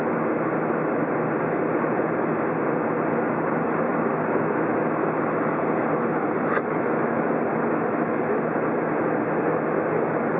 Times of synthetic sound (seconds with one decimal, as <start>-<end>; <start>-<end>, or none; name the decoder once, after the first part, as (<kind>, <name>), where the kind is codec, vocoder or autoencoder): none